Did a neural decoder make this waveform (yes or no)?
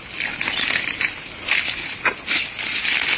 no